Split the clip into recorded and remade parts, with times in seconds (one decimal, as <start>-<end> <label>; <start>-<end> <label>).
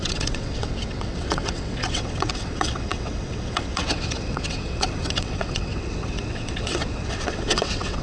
0.0-8.0 remade